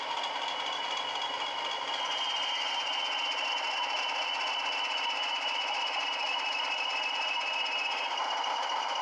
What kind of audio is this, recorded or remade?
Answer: recorded